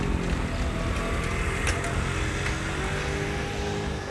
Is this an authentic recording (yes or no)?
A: yes